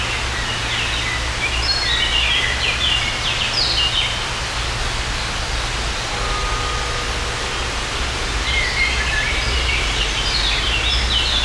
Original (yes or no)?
yes